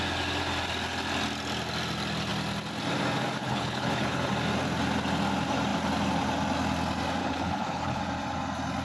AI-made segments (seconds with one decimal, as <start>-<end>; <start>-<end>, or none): 3.4-4.3; 7.2-8.0